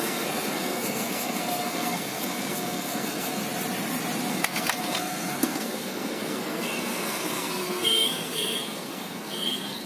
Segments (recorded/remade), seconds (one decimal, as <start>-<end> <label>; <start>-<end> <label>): 0.0-3.4 remade; 3.4-4.3 recorded; 4.3-9.9 remade